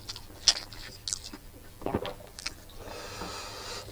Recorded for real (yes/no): yes